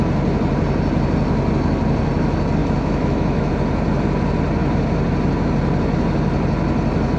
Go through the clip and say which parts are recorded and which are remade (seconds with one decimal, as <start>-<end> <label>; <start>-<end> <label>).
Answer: 0.0-2.6 recorded; 2.6-3.5 remade; 3.5-7.2 recorded